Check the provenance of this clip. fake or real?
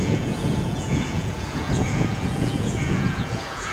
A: fake